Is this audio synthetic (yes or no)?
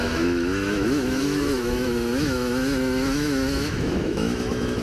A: yes